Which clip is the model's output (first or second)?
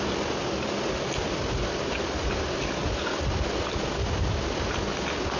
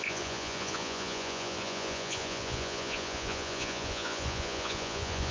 second